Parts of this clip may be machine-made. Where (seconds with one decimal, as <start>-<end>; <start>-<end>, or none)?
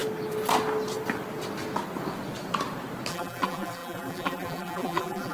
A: 3.1-5.3